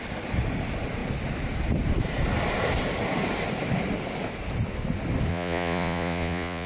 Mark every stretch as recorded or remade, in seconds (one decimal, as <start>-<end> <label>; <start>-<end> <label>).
0.0-5.3 recorded; 5.3-6.7 remade